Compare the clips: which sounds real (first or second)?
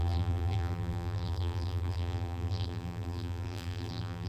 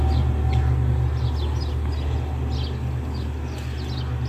second